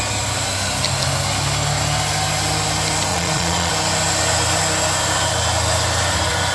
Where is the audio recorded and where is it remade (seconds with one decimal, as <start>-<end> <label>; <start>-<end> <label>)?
0.0-3.1 recorded; 3.1-3.7 remade; 3.7-6.5 recorded